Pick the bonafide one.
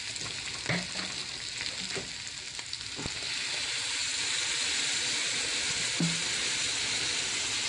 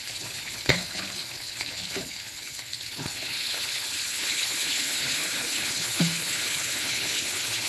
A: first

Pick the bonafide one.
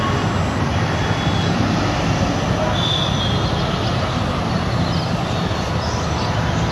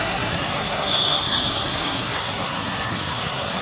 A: first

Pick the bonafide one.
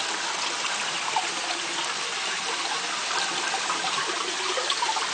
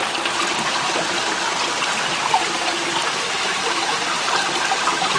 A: first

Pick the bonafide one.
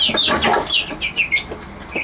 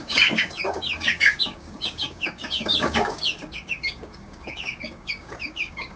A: first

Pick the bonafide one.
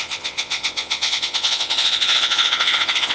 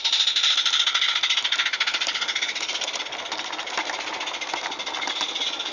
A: second